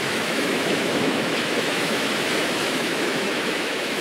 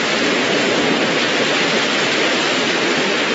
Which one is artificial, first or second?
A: first